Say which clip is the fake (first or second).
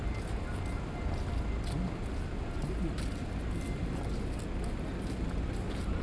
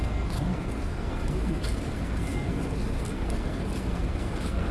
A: second